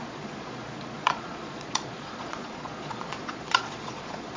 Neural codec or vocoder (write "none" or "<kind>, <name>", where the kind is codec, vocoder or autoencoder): vocoder, Vocos